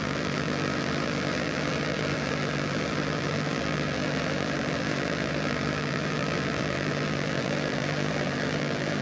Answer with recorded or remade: remade